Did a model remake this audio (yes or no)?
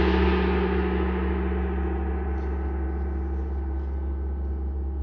no